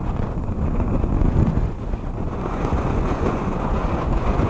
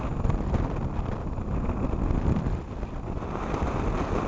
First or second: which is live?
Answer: second